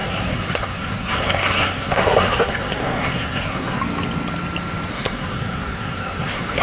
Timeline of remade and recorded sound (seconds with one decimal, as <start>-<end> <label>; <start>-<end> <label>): 0.0-3.8 remade; 3.8-4.9 recorded; 4.9-6.6 remade